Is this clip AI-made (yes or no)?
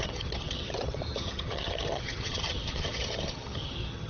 yes